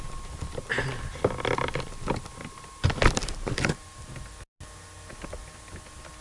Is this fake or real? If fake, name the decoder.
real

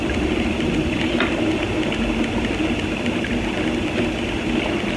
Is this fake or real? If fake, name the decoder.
fake, vocoder, BigVGAN v2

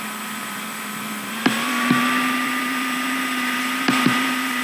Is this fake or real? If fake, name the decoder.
fake, vocoder, BigVGAN v2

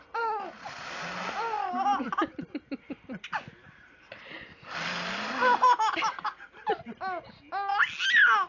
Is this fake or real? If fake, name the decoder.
real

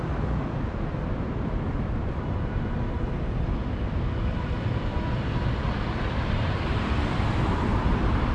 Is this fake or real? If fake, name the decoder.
fake, vocoder, BigVGAN v2